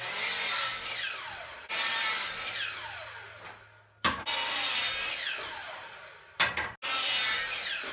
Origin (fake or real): real